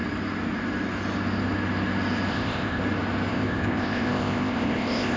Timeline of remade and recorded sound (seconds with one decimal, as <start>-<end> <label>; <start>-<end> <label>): 0.0-2.3 recorded; 2.3-2.8 remade; 2.8-3.3 recorded; 3.3-5.2 remade